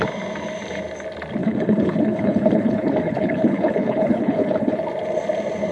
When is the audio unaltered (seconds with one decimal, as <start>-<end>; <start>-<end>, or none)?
0.0-1.4; 4.8-5.7